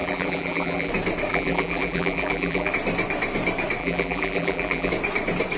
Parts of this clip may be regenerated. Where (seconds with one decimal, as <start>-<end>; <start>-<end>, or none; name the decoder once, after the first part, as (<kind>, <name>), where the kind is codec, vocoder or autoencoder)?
0.0-0.9 (vocoder, BigVGAN v2); 1.3-2.7; 3.8-4.9